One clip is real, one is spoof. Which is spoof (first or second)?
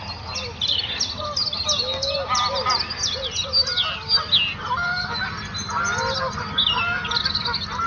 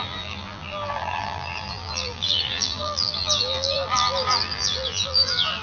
second